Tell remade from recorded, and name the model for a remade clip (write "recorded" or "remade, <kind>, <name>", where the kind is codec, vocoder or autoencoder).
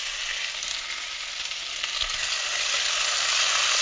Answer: recorded